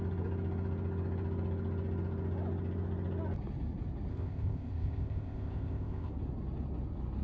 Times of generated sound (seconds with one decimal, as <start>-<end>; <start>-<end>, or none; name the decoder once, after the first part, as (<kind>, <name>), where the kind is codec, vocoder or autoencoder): 4.1-6.1 (codec, ZipCodec)